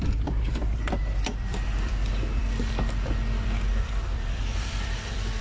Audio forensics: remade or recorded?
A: remade